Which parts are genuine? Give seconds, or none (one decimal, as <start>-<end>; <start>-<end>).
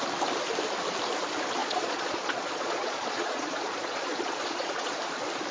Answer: 0.0-1.6; 4.9-5.5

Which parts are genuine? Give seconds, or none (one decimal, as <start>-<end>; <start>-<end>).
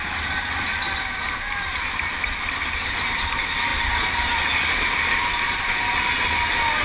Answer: 0.0-6.8